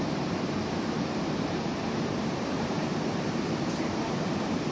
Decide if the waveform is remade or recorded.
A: remade